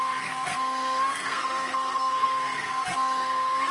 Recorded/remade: remade